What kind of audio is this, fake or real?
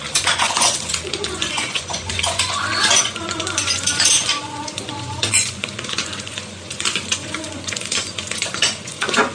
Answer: fake